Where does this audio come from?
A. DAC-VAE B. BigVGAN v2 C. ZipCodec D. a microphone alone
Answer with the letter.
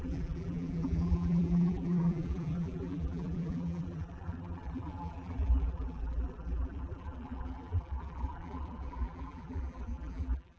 B